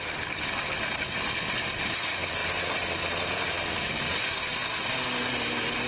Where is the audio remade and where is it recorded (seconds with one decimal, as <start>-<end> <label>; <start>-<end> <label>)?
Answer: 0.0-5.9 recorded